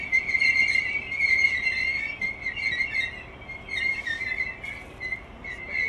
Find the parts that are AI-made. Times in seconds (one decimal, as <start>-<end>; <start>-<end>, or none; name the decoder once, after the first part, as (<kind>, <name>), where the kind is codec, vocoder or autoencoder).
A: 0.0-1.9 (vocoder, BigVGAN v2); 3.8-5.9